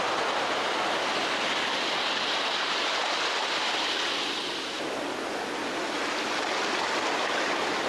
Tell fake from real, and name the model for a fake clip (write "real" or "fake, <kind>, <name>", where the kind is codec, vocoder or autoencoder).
real